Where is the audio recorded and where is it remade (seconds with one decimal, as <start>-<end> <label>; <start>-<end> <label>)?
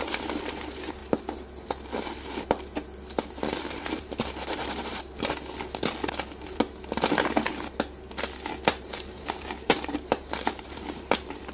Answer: 0.0-1.0 remade; 1.0-3.3 recorded; 3.3-4.1 remade; 4.1-8.7 recorded; 8.7-11.5 remade